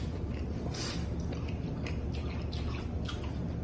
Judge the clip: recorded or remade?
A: recorded